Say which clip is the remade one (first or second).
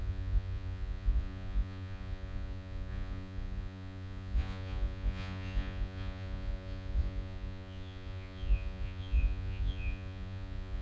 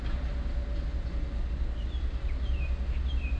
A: first